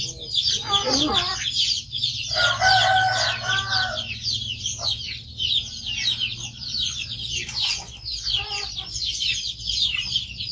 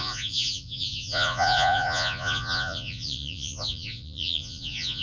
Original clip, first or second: first